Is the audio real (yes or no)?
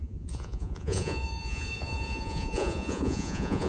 no